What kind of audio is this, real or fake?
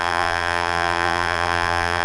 fake